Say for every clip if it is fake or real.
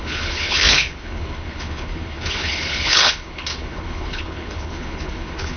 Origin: fake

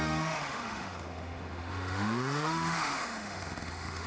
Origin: fake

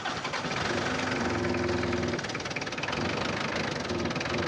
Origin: real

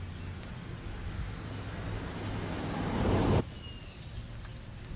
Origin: real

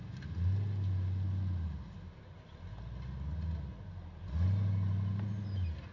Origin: real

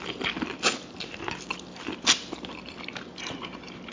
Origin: real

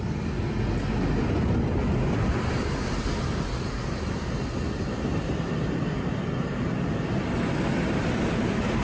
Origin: real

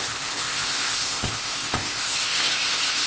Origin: fake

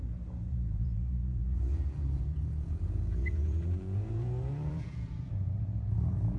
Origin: fake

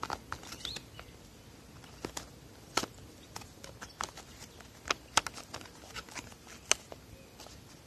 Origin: real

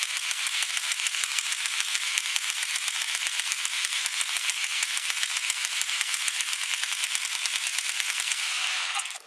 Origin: fake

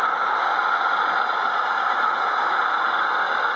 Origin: real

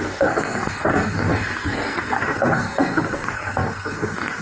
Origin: fake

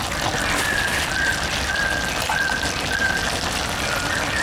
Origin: real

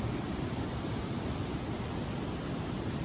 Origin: real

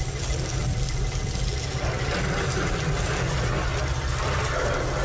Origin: real